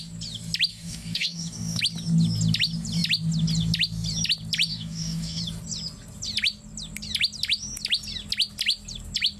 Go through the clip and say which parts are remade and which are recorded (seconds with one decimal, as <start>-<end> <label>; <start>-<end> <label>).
0.0-0.7 recorded; 0.7-1.8 remade; 1.8-4.7 recorded; 4.7-5.4 remade; 5.4-9.4 recorded